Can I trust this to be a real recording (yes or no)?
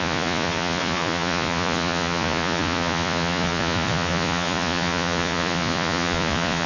no